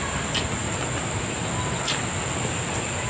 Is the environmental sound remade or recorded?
recorded